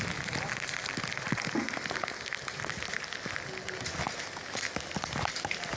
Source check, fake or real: real